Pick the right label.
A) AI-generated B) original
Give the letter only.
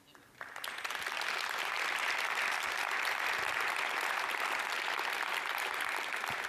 B